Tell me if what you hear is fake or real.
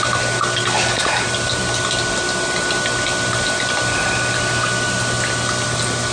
real